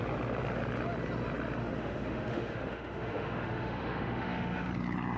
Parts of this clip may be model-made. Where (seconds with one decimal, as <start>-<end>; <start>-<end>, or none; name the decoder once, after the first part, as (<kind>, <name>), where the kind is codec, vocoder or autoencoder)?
1.6-4.7 (autoencoder, DAC-VAE)